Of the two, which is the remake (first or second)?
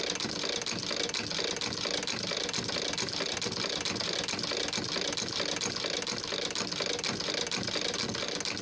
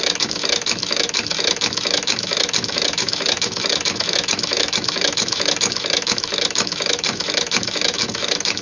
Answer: second